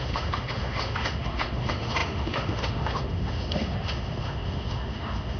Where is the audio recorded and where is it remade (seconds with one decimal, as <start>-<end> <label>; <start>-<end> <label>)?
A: 0.0-5.4 remade